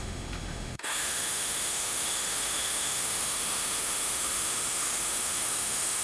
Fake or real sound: fake